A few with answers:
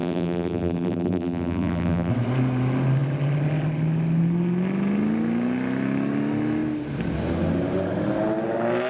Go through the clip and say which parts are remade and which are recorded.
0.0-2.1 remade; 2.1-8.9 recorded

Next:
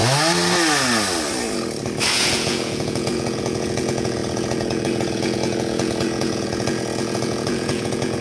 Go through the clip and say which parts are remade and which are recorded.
0.0-2.1 recorded; 2.1-8.2 remade